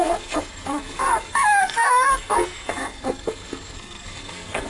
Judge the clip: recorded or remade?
remade